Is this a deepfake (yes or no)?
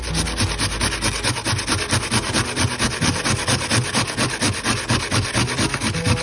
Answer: no